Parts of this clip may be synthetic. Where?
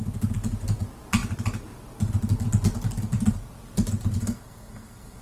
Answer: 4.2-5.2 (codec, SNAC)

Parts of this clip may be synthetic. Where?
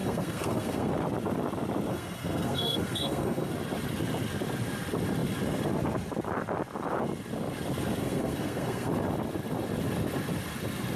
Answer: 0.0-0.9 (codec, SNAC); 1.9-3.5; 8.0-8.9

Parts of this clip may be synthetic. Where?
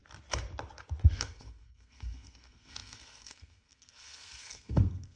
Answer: 1.1-5.2 (codec, SNAC)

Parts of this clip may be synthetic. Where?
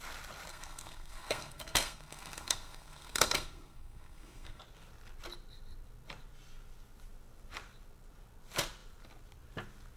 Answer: 0.5-4.6 (codec, SNAC)